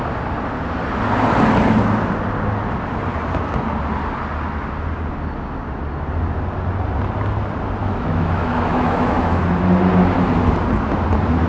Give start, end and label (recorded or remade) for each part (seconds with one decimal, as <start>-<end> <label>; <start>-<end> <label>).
0.0-7.8 recorded; 7.8-9.4 remade; 9.4-11.5 recorded